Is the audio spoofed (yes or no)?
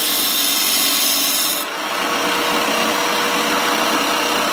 no